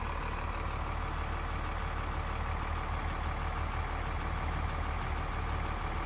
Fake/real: real